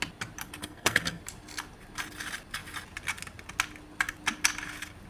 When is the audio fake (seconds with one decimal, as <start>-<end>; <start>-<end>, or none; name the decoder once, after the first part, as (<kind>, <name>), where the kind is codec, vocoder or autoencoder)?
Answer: 0.6-1.2 (codec, SNAC)

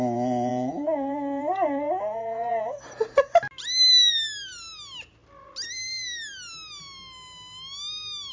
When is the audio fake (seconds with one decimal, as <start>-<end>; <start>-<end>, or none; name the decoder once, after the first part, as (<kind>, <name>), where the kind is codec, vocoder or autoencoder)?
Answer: 0.5-2.8 (vocoder, Vocos)